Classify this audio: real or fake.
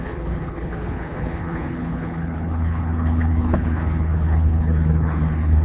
fake